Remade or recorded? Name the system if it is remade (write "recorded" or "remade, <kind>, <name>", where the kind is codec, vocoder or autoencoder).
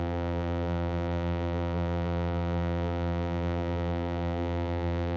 remade, vocoder, BigVGAN v2